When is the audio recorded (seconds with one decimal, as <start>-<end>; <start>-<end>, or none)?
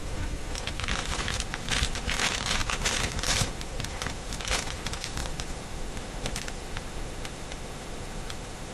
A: none